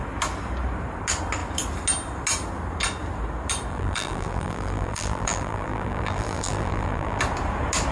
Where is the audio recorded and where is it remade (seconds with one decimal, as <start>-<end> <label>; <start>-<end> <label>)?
0.0-3.7 recorded; 3.7-7.2 remade; 7.2-7.9 recorded

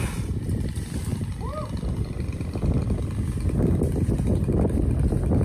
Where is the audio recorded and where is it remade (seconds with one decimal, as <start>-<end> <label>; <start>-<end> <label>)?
0.0-5.4 recorded

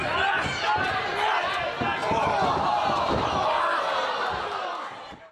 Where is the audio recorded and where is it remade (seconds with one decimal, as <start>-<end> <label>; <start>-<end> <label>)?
0.0-2.0 recorded; 2.0-5.3 remade

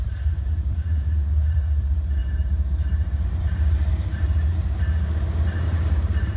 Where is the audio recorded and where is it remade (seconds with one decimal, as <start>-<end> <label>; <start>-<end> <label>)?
0.0-6.4 remade

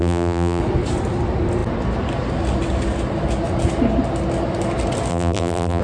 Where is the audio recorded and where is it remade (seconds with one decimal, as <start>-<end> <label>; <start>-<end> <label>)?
0.0-0.6 remade; 0.6-5.1 recorded; 5.1-5.8 remade

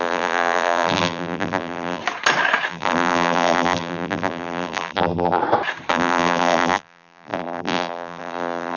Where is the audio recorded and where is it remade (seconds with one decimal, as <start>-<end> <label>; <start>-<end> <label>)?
0.0-2.0 remade; 2.0-2.7 recorded; 2.7-5.4 remade; 5.4-5.9 recorded; 5.9-8.8 remade